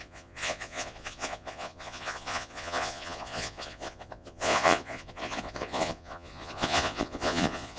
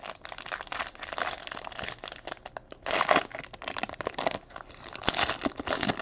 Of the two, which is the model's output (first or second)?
first